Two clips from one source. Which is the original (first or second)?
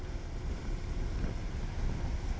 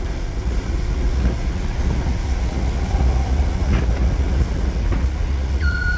first